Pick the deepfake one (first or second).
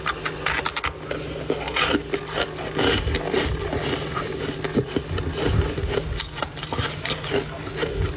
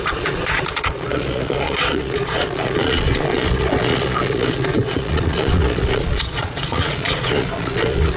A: second